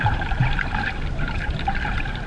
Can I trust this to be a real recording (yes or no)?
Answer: no